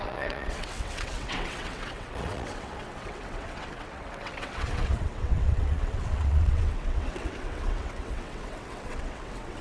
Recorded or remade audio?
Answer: remade